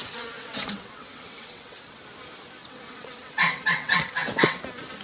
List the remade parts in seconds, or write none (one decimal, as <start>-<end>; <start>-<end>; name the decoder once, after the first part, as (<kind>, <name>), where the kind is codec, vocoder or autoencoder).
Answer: 0.0-2.0 (vocoder, WaveNeXt); 2.6-4.6